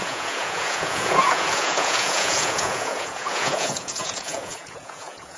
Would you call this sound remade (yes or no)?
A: yes